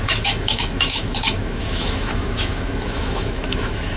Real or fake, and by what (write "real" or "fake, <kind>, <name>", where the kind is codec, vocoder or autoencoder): fake, autoencoder, DAC-VAE